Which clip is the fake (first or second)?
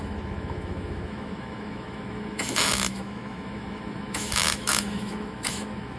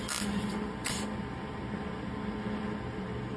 first